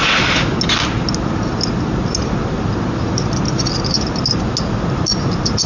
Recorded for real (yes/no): yes